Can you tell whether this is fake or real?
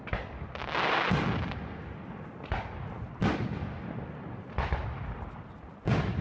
real